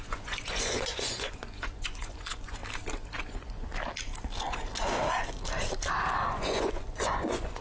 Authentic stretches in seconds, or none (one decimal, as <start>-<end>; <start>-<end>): 2.6-3.2; 3.7-6.3